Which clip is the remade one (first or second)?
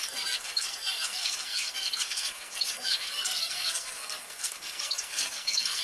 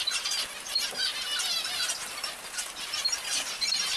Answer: first